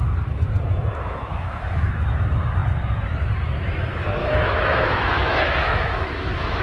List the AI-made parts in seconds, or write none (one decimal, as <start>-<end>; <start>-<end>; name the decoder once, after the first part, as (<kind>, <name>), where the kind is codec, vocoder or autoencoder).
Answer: 1.0-1.9 (autoencoder, DAC-VAE); 4.2-6.6